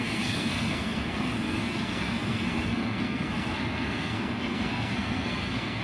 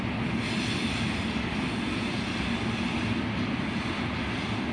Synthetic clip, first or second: first